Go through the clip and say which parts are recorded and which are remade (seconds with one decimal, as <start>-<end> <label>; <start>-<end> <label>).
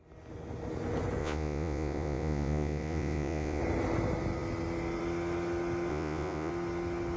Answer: 0.0-1.2 recorded; 1.2-3.6 remade; 3.6-5.9 recorded; 5.9-6.5 remade; 6.5-7.2 recorded